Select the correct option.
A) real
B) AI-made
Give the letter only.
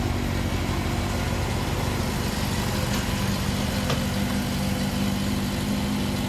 A